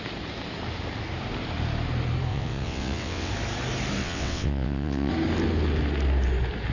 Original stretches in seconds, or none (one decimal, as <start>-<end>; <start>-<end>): 0.0-2.3; 3.3-4.0; 5.1-6.7